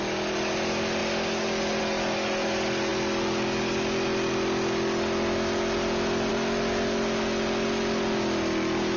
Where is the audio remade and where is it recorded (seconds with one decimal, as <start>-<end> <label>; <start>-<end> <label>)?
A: 0.0-9.0 recorded